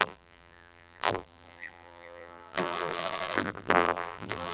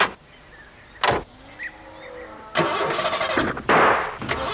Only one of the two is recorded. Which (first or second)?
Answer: second